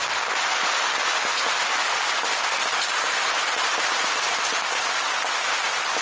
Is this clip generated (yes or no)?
no